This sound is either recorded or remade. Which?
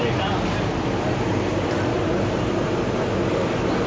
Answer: recorded